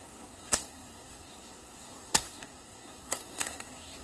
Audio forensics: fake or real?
fake